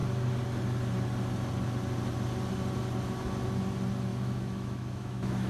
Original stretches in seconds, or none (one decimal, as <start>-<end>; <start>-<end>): 0.0-4.1